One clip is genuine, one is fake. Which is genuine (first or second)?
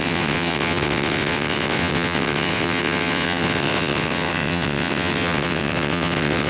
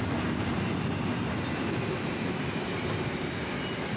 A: second